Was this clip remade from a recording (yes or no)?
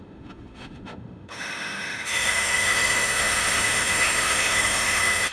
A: yes